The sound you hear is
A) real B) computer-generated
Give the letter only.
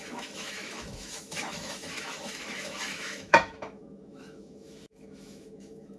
B